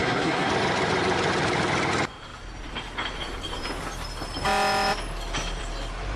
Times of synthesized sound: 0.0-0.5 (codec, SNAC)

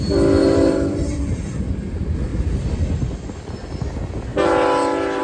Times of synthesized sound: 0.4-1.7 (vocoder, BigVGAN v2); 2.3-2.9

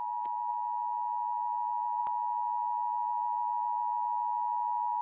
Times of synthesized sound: none

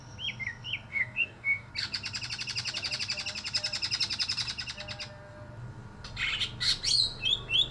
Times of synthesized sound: 0.9-1.7 (codec, DAC)

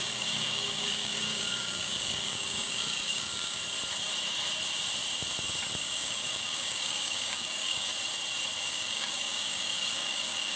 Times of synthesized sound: 0.0-3.6 (codec, DAC); 5.8-7.9; 8.7-10.6

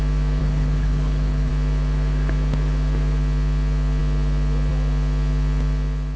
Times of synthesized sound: 0.4-1.5 (codec, HILCodec)